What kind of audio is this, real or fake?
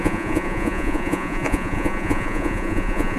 fake